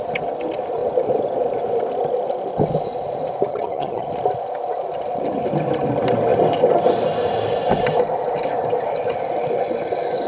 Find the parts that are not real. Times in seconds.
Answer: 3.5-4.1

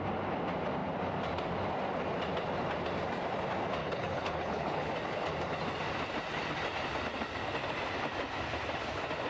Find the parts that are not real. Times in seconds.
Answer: 3.8-4.9

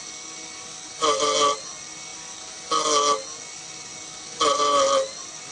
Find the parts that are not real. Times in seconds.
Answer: none